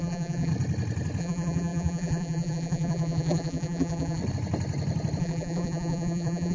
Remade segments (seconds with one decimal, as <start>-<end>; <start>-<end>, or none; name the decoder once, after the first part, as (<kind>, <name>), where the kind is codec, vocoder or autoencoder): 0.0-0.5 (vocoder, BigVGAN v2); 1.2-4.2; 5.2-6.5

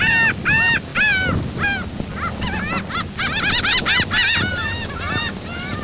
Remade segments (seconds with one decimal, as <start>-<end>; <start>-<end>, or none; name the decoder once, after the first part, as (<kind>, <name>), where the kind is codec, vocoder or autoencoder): 4.5-5.8 (vocoder, BigVGAN v2)

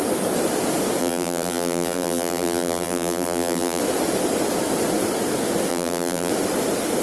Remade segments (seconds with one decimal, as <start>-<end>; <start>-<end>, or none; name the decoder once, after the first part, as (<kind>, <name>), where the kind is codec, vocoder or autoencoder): 1.0-3.8 (vocoder, BigVGAN v2); 5.7-6.3